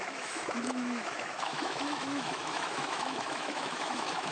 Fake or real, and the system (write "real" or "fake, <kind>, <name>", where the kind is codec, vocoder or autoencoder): fake, autoencoder, DAC-VAE